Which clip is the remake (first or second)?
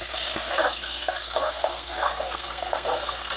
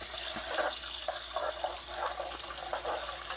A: first